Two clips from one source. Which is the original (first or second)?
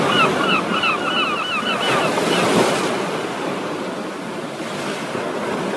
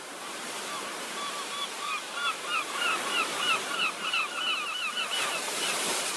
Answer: first